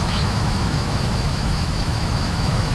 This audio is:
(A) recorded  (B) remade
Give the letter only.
B